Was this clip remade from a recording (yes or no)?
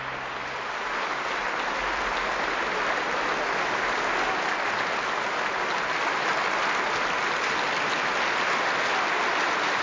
no